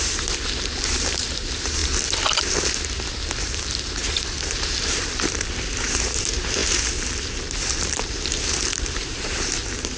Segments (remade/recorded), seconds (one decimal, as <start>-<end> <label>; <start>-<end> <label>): 0.0-1.8 remade; 1.8-3.4 recorded; 3.4-5.0 remade; 5.0-5.9 recorded; 5.9-6.6 remade; 6.6-7.2 recorded; 7.2-10.0 remade